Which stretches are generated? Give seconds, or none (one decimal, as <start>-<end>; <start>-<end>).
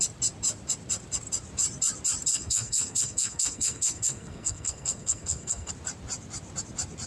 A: 2.3-5.7